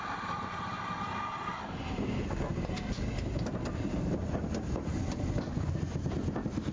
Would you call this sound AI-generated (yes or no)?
no